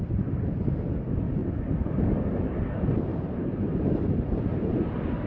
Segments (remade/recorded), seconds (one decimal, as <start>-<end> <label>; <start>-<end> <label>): 0.0-3.1 recorded; 3.1-3.9 remade; 3.9-5.3 recorded